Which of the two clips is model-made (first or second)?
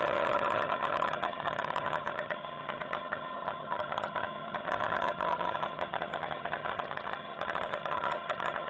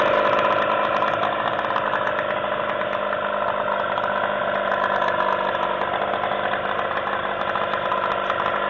first